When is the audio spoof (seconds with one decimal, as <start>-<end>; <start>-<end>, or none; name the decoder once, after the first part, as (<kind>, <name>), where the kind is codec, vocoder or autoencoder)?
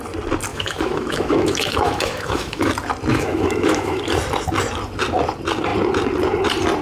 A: 0.5-2.7 (autoencoder, DAC-VAE); 3.1-4.0